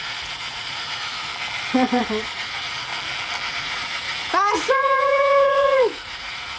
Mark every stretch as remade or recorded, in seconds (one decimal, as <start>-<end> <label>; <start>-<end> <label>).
0.0-1.3 remade; 1.3-2.0 recorded; 2.0-2.9 remade; 2.9-3.5 recorded; 3.5-6.6 remade